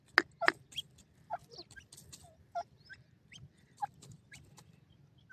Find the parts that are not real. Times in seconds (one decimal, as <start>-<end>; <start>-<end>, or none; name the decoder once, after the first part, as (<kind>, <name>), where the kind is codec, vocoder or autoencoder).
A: 2.6-3.1 (vocoder, BigVGAN v2)